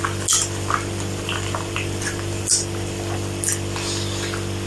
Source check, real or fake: real